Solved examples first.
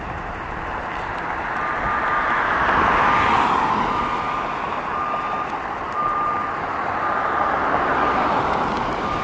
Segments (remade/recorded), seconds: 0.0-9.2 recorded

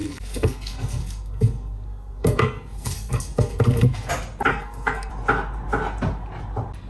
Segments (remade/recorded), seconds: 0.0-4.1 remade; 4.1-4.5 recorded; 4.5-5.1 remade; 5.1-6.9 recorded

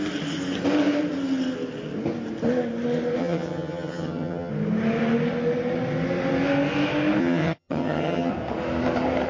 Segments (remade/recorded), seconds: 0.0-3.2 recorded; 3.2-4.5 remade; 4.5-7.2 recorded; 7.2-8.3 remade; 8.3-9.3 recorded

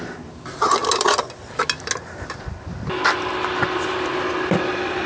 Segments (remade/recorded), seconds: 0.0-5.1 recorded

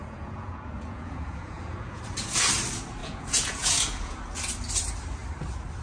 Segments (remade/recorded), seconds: 0.0-2.0 remade; 2.0-3.0 recorded; 3.0-4.2 remade; 4.2-5.8 recorded